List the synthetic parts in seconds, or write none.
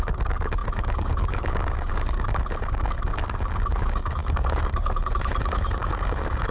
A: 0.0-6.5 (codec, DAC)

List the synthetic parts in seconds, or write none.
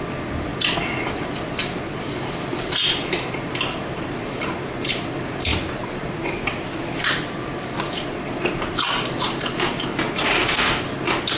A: 0.5-2.7 (vocoder, BigVGAN v2); 5.5-8.6